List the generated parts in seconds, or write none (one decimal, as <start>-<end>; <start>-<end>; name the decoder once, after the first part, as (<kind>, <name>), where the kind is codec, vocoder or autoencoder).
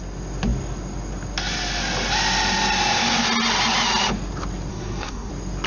4.7-5.3 (codec, SNAC)